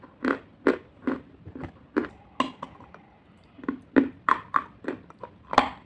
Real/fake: real